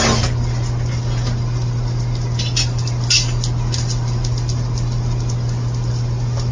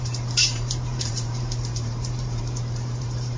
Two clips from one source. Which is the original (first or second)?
first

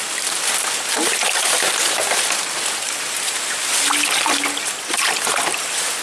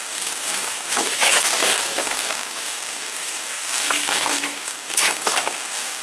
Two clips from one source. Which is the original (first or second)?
first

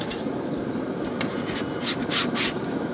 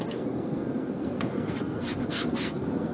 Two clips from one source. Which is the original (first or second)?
first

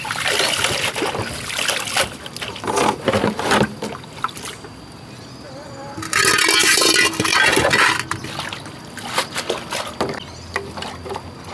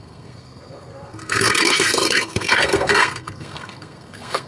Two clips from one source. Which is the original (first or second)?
first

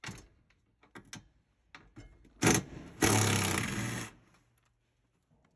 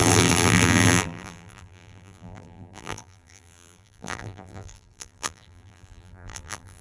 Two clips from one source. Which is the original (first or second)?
first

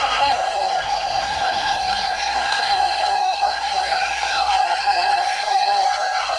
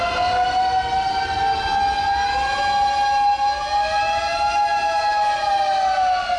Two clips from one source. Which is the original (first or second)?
second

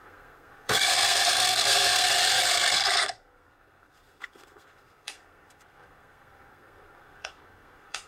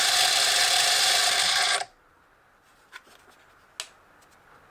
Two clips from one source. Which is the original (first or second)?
second